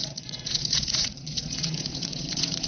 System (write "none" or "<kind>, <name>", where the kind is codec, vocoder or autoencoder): vocoder, Vocos